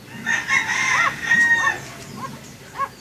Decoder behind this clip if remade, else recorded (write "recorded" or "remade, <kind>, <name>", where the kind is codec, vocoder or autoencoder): recorded